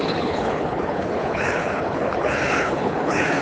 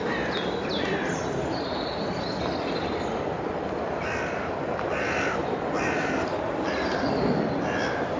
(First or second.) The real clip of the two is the second